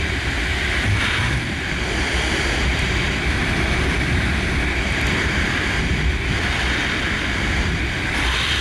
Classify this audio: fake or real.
real